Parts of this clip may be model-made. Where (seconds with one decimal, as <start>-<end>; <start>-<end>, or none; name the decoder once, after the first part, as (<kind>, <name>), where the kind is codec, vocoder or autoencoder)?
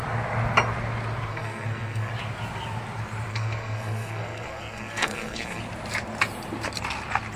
1.3-2.1 (codec, SNAC); 3.3-5.6